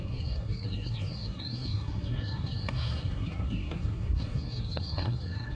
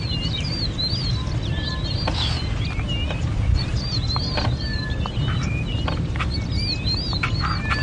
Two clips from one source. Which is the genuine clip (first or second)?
second